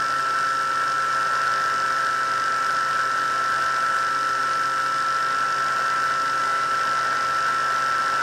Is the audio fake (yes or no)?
no